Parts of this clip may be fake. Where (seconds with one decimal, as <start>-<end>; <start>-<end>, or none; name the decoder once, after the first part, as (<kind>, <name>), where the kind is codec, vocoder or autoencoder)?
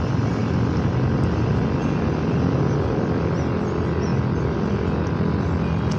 none